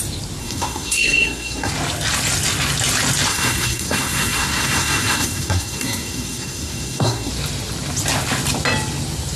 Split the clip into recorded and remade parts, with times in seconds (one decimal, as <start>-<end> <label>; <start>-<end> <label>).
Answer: 0.0-0.4 recorded; 0.4-1.7 remade; 1.7-3.3 recorded; 3.3-7.3 remade; 7.3-9.4 recorded